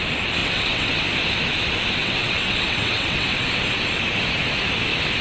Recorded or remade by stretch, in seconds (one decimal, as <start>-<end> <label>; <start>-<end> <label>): 0.0-0.4 recorded; 0.4-1.0 remade; 1.0-2.0 recorded; 2.0-3.6 remade; 3.6-5.2 recorded